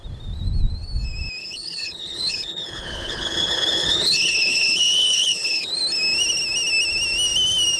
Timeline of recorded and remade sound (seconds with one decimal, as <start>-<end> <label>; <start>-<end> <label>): 0.0-1.4 recorded; 1.4-5.7 remade; 5.7-7.8 recorded